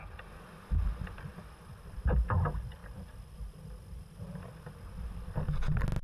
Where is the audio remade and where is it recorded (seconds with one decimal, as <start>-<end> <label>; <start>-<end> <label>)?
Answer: 0.0-1.3 recorded; 1.3-2.1 remade; 2.1-6.0 recorded